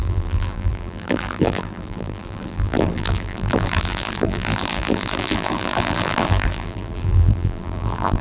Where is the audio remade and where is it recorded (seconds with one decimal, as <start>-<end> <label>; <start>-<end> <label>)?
0.0-8.2 remade